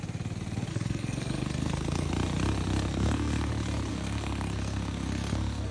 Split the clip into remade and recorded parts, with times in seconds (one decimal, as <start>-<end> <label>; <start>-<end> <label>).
0.0-0.7 recorded; 0.7-2.1 remade; 2.1-2.9 recorded; 2.9-3.5 remade; 3.5-3.9 recorded; 3.9-5.7 remade